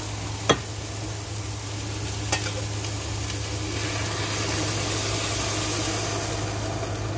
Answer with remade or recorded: recorded